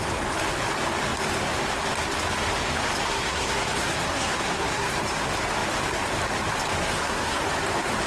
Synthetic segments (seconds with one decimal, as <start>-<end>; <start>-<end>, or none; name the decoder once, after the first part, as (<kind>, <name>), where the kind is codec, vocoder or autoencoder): 3.1-4.9 (codec, SNAC); 6.8-7.4